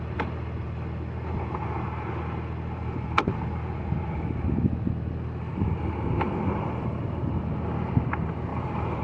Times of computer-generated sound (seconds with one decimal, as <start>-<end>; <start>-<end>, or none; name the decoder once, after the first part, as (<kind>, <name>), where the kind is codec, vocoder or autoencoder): 2.8-3.3 (vocoder, BigVGAN v2); 5.5-7.3; 8.5-9.0